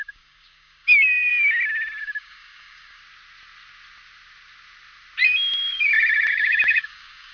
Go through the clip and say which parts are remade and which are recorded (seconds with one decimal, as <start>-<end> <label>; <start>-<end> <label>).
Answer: 0.0-1.3 remade; 1.3-2.0 recorded; 2.0-3.0 remade; 3.0-6.3 recorded; 6.3-7.3 remade